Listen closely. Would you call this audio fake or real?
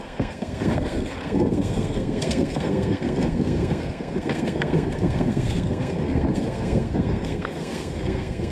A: fake